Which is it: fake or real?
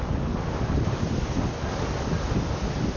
real